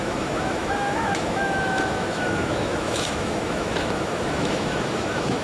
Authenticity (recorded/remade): remade